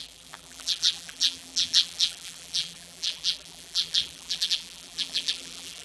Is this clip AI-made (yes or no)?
yes